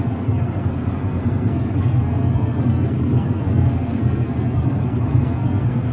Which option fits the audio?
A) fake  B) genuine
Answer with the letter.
A